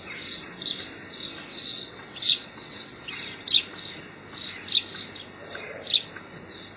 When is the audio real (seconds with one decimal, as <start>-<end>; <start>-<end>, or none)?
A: 0.0-1.5; 3.1-6.8